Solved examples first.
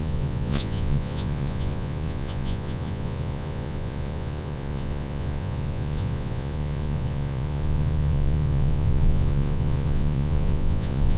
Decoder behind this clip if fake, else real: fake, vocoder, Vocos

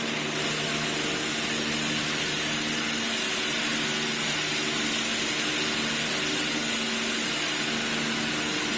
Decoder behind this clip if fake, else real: real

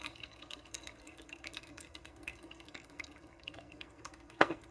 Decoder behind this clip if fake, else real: fake, codec, SNAC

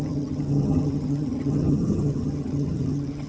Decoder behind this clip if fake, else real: fake, vocoder, HiFi-GAN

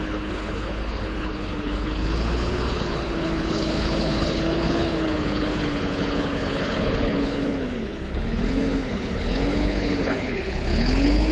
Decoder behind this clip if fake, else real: fake, codec, HILCodec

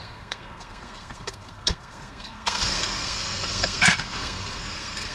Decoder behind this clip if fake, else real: fake, codec, SNAC